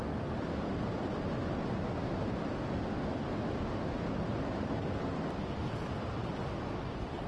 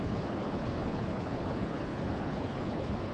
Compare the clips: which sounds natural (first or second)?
first